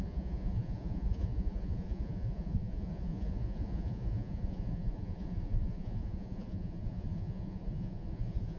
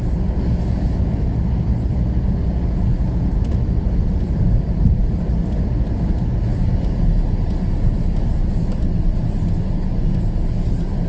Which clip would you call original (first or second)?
second